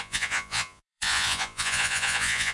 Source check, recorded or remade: remade